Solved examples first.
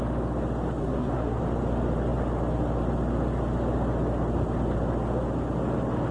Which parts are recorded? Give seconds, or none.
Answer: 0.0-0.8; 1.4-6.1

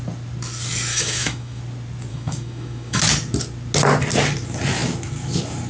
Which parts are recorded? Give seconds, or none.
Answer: 0.0-0.9; 1.6-2.1; 3.0-5.7

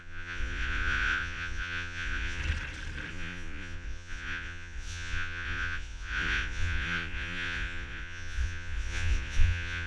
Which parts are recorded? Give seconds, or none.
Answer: 2.4-3.1

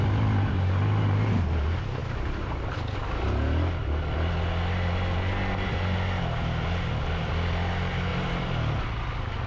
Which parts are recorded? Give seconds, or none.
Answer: 0.0-8.1; 8.7-9.5

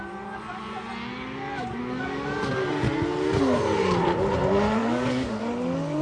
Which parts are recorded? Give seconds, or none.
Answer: 0.0-1.8; 2.5-4.8; 5.4-6.0

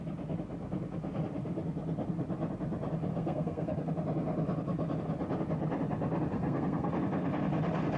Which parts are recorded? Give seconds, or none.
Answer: 0.0-3.1; 3.9-6.3; 6.9-8.0

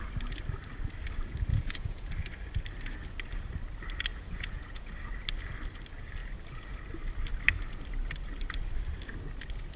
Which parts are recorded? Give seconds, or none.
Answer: 0.0-1.5; 2.1-4.1; 4.9-9.8

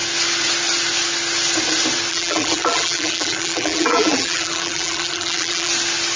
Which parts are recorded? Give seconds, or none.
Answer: 0.0-2.1; 5.7-6.2